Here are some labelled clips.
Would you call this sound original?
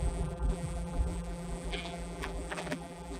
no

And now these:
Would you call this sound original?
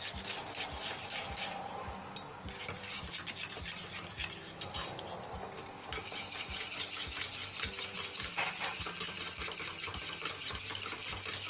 yes